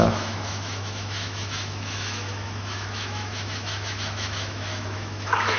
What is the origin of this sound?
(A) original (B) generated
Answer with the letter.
B